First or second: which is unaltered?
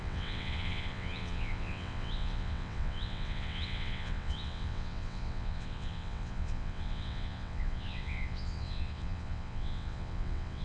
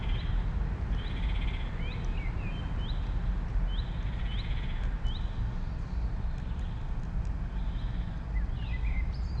second